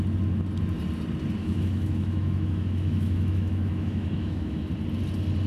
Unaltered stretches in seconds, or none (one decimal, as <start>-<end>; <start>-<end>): 0.0-1.4; 4.7-5.5